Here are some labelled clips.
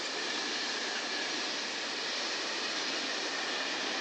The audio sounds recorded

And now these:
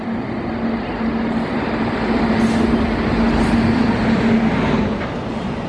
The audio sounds recorded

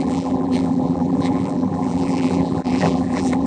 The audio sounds remade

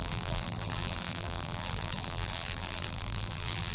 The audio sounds remade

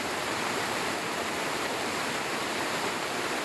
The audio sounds remade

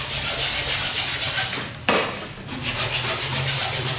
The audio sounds recorded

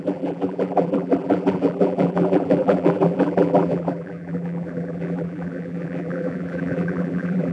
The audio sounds remade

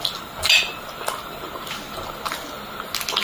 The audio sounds recorded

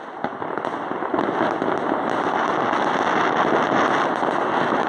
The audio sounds recorded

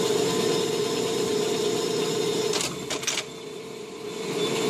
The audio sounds recorded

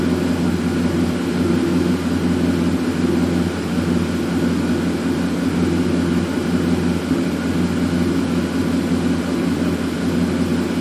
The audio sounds recorded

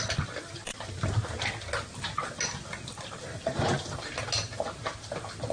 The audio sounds recorded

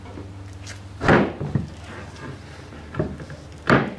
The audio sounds remade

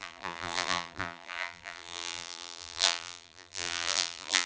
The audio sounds remade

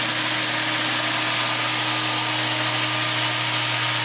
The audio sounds recorded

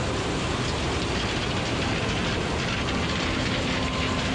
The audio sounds recorded